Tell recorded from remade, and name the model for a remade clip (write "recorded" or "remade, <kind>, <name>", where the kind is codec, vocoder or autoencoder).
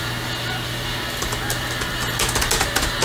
recorded